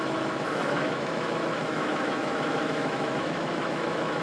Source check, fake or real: fake